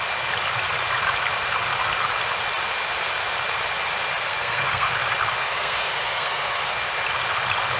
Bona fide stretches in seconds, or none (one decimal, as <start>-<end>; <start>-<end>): 0.0-4.3; 4.9-5.4; 6.7-7.8